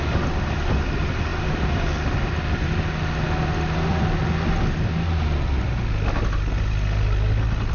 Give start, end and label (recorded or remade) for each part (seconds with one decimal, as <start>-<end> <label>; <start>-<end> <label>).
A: 0.0-7.7 recorded

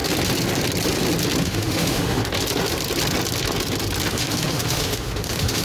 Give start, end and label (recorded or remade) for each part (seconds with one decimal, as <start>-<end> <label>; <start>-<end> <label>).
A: 0.0-1.4 recorded; 1.4-2.2 remade; 2.2-4.1 recorded; 4.1-5.6 remade

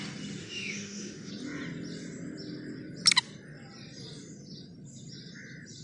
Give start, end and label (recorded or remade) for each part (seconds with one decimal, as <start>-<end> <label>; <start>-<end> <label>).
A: 0.0-0.4 recorded; 0.4-1.3 remade; 1.3-5.8 recorded

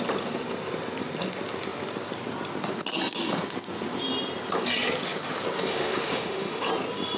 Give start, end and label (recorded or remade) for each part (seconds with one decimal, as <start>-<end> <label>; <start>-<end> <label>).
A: 0.0-5.7 recorded; 5.7-6.7 remade; 6.7-7.2 recorded

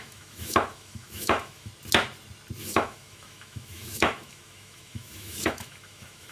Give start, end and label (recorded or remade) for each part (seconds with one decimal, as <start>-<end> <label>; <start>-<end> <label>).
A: 0.0-1.7 remade; 1.7-2.6 recorded; 2.6-6.3 remade